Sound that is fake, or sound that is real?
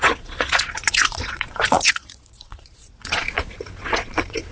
fake